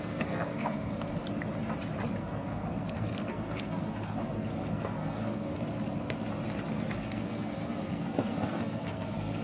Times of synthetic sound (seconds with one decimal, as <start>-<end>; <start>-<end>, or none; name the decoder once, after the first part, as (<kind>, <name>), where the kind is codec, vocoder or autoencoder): 0.0-1.2 (codec, SNAC); 2.2-5.5; 6.7-9.4